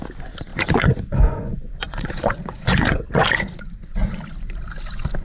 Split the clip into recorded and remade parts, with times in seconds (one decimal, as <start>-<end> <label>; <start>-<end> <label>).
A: 0.0-0.5 recorded; 0.5-3.6 remade; 3.6-5.2 recorded